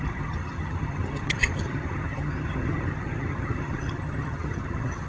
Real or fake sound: fake